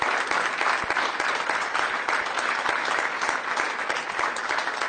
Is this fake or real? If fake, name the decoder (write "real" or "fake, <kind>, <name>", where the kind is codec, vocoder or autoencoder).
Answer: real